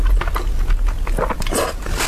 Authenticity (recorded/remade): recorded